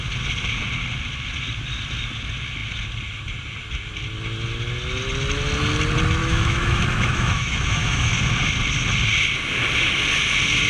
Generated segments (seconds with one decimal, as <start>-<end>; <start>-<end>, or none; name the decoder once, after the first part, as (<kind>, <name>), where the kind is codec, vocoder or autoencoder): 6.2-8.1 (autoencoder, DAC-VAE)

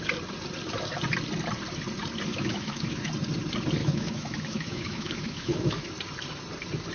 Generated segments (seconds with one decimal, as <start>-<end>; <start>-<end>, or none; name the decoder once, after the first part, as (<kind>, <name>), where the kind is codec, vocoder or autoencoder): 2.3-3.1 (autoencoder, DAC-VAE); 3.8-5.9

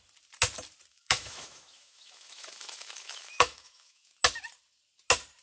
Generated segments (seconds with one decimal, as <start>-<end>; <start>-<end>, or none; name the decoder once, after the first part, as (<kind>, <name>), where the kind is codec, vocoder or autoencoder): 0.9-4.1 (autoencoder, DAC-VAE)

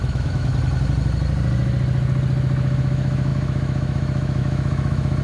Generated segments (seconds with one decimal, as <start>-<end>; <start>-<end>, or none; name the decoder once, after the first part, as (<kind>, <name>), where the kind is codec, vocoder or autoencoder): 0.0-0.5 (autoencoder, DAC-VAE); 2.8-5.2

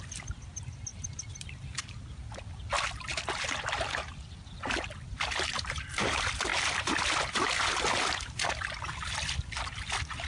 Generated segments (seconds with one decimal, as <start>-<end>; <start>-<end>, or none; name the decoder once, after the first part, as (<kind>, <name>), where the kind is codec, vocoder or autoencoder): none